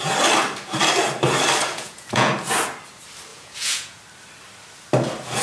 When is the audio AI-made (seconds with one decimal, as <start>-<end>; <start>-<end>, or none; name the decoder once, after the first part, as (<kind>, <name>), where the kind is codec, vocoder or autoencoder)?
1.7-2.3 (vocoder, Vocos); 3.3-4.0

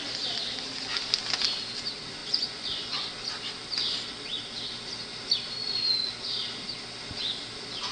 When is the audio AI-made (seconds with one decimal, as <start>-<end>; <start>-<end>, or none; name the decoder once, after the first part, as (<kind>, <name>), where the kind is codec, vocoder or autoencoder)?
2.2-3.1 (vocoder, Vocos)

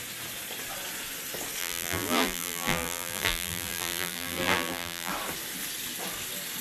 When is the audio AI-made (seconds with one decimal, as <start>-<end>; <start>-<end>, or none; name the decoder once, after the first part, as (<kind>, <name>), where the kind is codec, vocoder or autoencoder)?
1.6-5.1 (vocoder, BigVGAN v2)

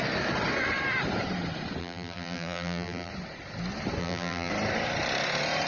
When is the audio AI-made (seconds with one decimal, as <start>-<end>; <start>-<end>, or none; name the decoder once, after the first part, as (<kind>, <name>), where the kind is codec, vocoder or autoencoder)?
1.8-3.1 (vocoder, BigVGAN v2); 4.0-4.5

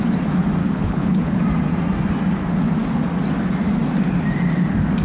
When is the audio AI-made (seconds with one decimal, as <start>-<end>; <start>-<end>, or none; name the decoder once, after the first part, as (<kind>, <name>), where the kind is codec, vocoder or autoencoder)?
0.6-1.4 (codec, HILCodec)